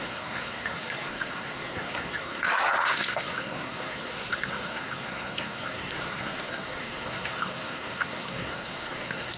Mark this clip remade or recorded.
remade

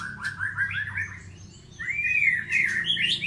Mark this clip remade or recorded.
recorded